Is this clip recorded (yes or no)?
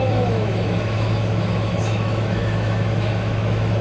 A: no